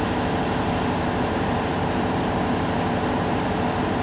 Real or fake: fake